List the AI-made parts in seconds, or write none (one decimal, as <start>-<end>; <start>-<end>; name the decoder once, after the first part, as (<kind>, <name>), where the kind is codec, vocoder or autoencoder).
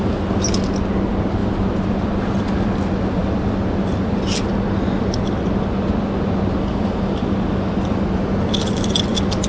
none